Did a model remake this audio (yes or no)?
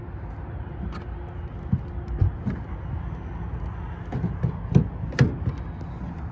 no